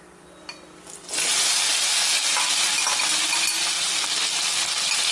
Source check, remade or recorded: recorded